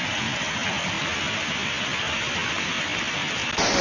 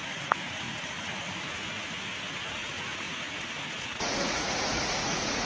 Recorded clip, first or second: first